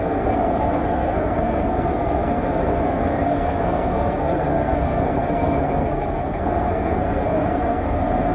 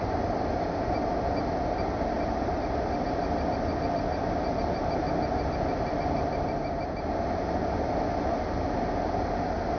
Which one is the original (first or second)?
second